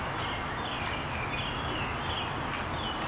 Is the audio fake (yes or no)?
no